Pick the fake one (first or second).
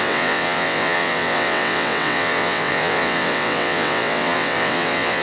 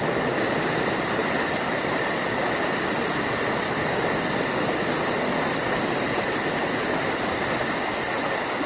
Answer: first